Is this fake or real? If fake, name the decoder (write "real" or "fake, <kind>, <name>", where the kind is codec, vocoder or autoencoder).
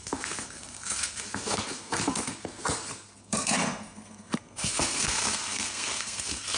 fake, codec, SNAC